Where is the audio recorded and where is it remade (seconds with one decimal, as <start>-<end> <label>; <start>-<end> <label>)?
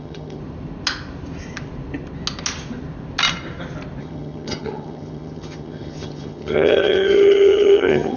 0.0-0.4 remade; 0.4-4.0 recorded; 4.0-8.2 remade